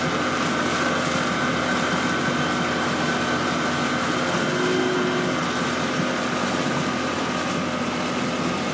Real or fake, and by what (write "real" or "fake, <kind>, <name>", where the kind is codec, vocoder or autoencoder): real